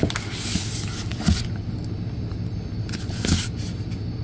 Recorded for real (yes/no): yes